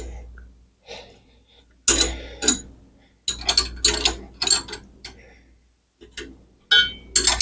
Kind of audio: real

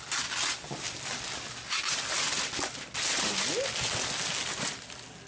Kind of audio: real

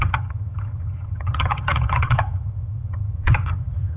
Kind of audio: fake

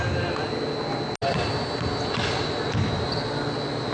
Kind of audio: real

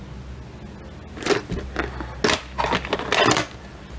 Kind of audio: real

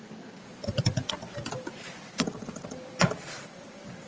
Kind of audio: real